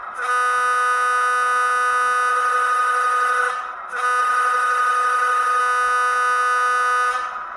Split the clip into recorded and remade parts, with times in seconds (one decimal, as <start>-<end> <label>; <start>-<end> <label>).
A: 0.0-2.3 recorded; 2.3-3.5 remade; 3.5-4.2 recorded; 4.2-5.6 remade; 5.6-7.6 recorded